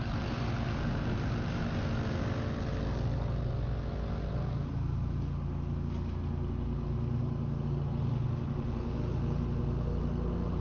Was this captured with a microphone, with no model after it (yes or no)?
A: yes